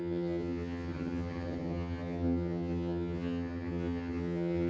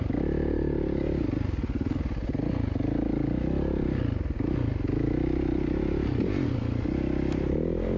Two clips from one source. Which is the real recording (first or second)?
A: second